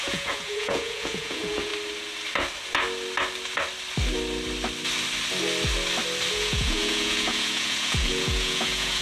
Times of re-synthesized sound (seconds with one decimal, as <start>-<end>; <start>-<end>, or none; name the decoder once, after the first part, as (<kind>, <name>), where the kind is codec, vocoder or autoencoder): 0.0-1.7 (vocoder, Vocos); 6.3-9.0